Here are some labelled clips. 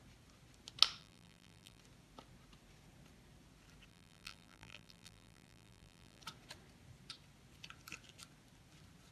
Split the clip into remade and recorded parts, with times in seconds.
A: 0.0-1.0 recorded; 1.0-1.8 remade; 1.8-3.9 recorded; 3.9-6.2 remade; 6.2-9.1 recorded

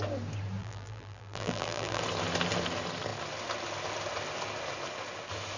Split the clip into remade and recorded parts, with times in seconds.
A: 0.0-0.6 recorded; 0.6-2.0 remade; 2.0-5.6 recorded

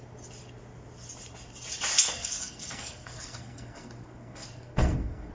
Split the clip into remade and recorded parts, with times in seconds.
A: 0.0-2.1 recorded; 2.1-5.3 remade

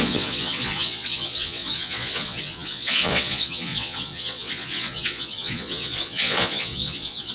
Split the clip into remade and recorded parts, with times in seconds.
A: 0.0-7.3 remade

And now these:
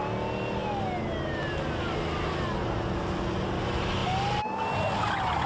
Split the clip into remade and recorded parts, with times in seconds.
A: 0.0-5.5 recorded

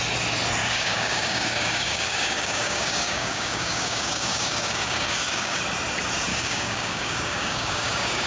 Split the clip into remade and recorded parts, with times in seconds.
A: 0.0-0.6 recorded; 0.6-5.6 remade; 5.6-6.3 recorded; 6.3-8.3 remade

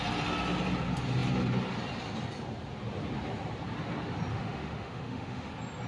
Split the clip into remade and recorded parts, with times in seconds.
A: 0.0-4.3 recorded; 4.3-5.5 remade; 5.5-5.9 recorded